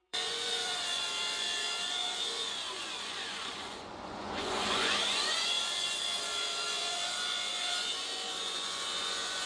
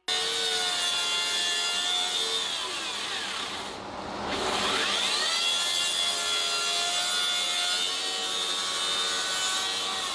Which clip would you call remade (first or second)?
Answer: first